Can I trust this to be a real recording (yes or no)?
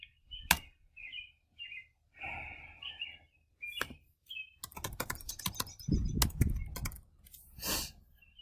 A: yes